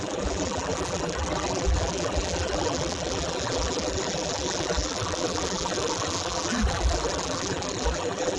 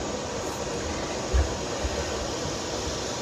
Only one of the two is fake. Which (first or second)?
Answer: first